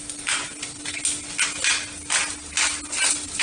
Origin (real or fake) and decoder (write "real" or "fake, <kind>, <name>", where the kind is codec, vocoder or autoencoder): real